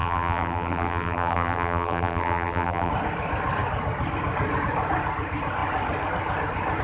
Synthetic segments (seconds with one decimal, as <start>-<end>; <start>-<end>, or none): 0.0-2.9